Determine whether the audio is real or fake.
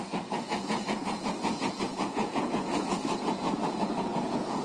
fake